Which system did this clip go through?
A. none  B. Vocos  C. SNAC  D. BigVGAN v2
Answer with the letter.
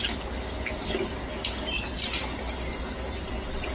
A